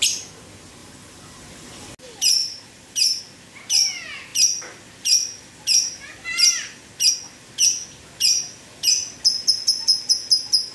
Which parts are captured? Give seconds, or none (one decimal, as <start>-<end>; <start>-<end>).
0.0-0.8; 1.9-2.4; 3.2-10.7